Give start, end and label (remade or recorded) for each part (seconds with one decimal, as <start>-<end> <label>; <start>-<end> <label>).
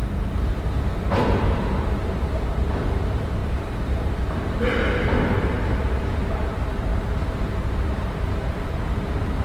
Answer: 0.0-9.4 remade